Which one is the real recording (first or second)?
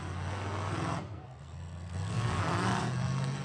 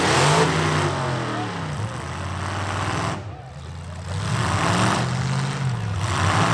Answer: second